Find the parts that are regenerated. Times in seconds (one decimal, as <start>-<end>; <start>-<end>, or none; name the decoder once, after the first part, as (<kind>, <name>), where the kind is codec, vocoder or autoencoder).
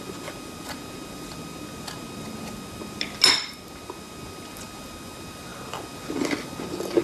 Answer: none